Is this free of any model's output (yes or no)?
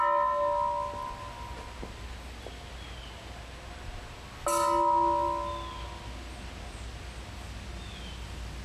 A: yes